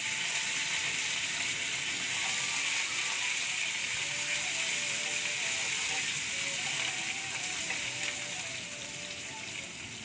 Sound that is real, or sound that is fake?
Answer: real